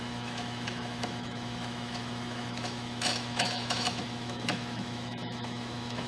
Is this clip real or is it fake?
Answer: fake